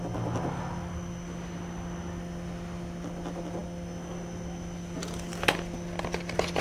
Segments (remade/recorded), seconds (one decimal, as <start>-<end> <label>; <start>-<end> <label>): 0.0-6.6 recorded